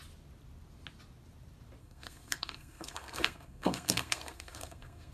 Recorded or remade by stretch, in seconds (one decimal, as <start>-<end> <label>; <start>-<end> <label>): 0.0-1.8 recorded; 1.8-5.1 remade